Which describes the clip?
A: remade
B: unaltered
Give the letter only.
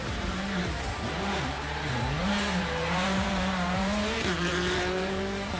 A